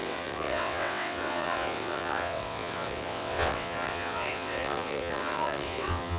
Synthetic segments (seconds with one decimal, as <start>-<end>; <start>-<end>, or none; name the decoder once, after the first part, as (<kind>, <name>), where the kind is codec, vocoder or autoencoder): 0.0-6.2 (vocoder, WaveNeXt)